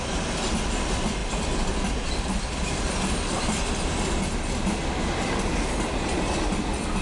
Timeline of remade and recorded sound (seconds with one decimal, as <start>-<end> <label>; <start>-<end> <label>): 0.0-7.0 recorded